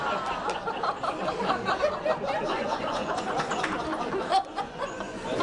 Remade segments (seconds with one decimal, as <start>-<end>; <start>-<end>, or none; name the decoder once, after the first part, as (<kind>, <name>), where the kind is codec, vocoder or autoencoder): 2.5-3.2 (vocoder, Vocos); 4.3-5.4